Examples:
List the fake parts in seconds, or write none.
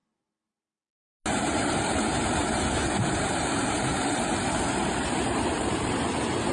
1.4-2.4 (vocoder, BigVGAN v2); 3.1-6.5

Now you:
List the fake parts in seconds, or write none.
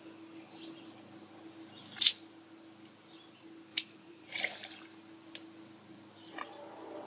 3.7-4.8 (vocoder, BigVGAN v2)